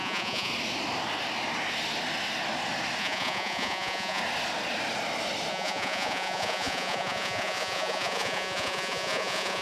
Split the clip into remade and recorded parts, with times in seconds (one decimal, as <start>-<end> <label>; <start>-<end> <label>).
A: 0.0-0.5 remade; 0.5-3.0 recorded; 3.0-4.2 remade; 4.2-5.5 recorded; 5.5-9.6 remade